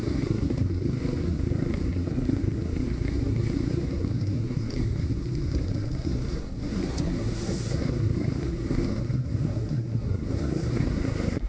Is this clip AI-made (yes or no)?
yes